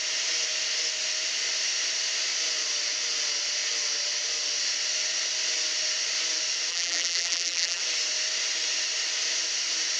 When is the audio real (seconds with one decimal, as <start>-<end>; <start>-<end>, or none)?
0.0-6.7; 7.8-10.0